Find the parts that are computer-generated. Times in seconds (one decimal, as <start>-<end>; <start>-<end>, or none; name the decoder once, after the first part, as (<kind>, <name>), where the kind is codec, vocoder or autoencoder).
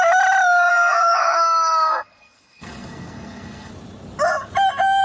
0.7-3.7 (codec, SNAC)